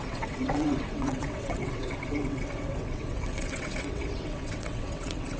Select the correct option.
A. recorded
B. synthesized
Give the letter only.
B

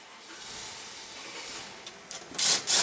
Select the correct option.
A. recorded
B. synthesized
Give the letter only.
A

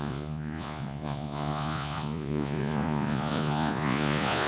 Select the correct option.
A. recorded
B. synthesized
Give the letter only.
B